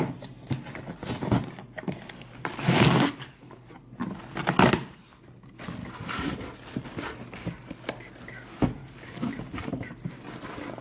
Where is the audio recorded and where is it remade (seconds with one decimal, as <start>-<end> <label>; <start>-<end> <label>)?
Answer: 0.0-1.6 recorded; 1.6-3.5 remade; 3.5-5.8 recorded; 5.8-6.4 remade; 6.4-8.8 recorded; 8.8-9.9 remade; 9.9-10.8 recorded